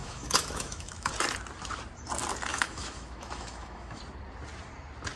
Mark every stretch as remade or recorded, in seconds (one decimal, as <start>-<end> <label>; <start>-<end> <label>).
0.0-1.1 remade; 1.1-2.5 recorded; 2.5-4.0 remade; 4.0-5.2 recorded